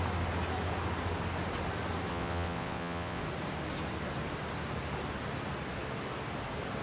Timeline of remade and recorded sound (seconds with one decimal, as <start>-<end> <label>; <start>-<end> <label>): 0.0-2.1 recorded; 2.1-3.2 remade; 3.2-6.8 recorded